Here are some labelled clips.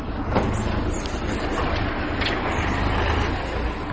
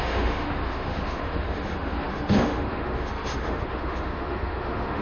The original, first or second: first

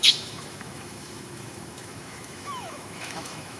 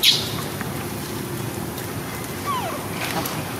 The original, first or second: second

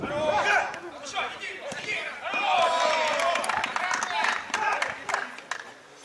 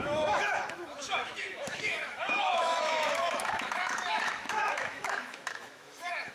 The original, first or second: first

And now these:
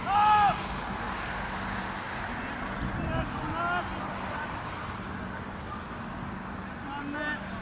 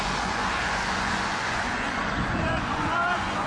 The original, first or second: first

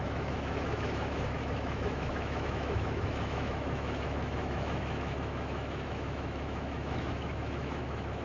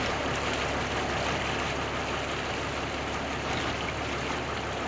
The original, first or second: second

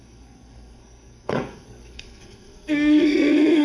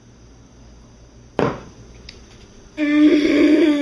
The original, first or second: second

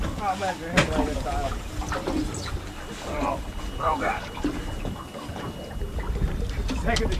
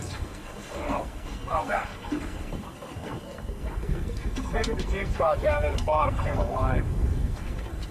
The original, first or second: first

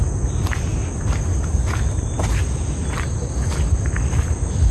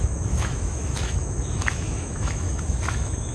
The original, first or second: first